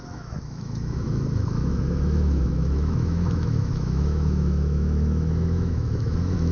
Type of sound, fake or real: fake